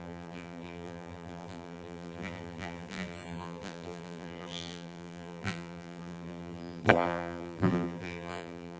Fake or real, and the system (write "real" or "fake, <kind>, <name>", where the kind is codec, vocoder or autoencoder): fake, vocoder, BigVGAN v2